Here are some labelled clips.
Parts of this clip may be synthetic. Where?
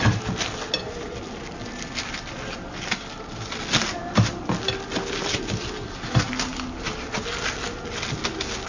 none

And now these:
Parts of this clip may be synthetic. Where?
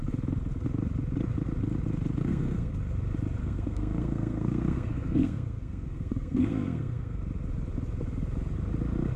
2.2-2.7 (codec, SNAC); 3.4-7.2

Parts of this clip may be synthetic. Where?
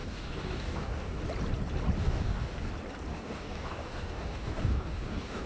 0.0-1.2 (codec, DAC); 2.0-2.7; 3.1-5.5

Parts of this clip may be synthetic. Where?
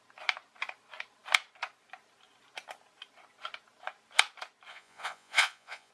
4.7-5.9 (vocoder, Vocos)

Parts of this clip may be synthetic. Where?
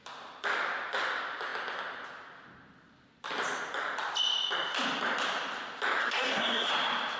6.0-6.7 (codec, SNAC)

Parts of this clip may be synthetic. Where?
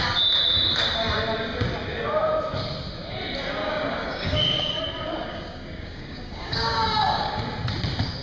3.6-4.8 (codec, DAC); 5.3-7.4